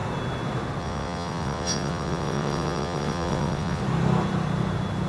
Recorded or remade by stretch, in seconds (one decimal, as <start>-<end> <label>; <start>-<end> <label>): 0.0-0.8 recorded; 0.8-3.8 remade; 3.8-5.1 recorded